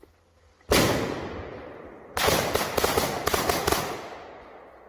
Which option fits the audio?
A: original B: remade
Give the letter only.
A